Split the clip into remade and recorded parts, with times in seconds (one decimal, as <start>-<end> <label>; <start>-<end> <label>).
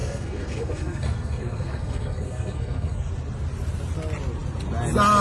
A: 0.0-3.1 remade; 3.1-5.2 recorded